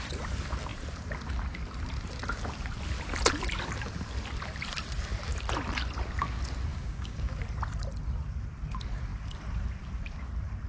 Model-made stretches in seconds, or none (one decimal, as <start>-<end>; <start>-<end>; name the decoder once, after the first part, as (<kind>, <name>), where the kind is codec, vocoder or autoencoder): 6.7-7.4 (codec, DAC)